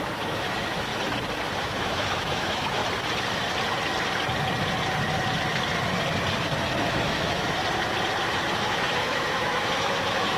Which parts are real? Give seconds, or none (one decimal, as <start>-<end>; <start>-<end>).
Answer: 0.9-1.6; 2.8-6.8; 7.6-8.6

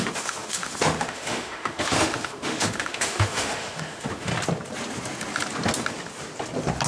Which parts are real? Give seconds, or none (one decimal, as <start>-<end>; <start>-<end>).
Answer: 4.3-6.9

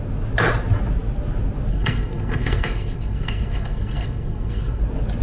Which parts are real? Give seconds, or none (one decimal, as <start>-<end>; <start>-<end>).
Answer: 0.0-1.7; 4.8-5.2

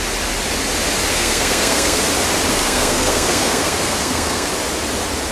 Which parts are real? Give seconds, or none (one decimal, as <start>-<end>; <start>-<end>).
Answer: 0.0-1.1; 2.0-2.5; 4.5-5.3

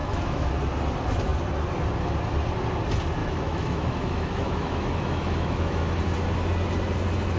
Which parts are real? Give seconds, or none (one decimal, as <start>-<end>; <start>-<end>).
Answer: 0.5-3.2; 5.8-7.4

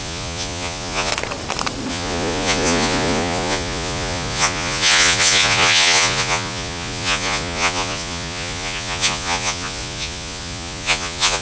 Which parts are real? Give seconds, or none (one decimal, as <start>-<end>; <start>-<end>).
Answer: 1.1-1.9